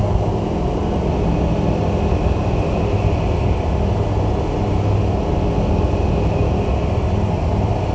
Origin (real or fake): real